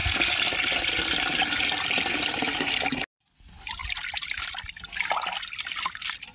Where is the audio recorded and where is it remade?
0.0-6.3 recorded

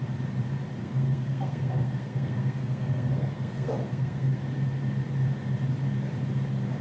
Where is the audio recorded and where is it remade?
0.0-0.8 recorded; 0.8-4.4 remade; 4.4-6.8 recorded

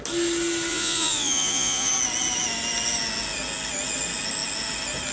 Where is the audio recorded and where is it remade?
0.0-0.7 recorded; 0.7-1.9 remade; 1.9-5.1 recorded